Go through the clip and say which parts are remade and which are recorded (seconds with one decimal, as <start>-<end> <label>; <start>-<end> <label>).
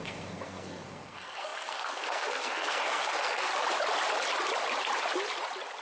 0.0-3.5 remade; 3.5-5.8 recorded